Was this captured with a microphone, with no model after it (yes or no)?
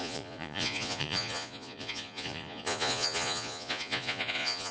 no